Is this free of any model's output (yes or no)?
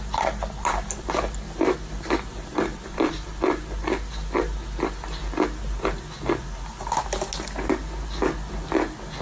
yes